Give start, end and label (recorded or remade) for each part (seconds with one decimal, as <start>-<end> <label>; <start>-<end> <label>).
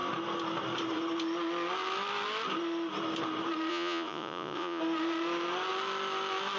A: 0.0-3.7 recorded; 3.7-4.8 remade; 4.8-6.6 recorded